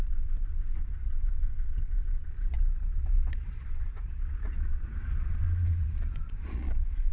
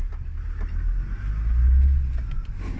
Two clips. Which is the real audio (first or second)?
second